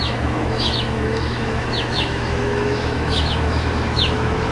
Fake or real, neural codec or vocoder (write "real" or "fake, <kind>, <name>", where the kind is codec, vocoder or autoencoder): fake, autoencoder, DAC-VAE